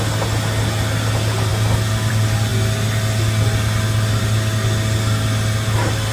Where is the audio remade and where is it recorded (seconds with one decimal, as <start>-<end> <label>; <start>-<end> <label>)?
0.0-6.1 recorded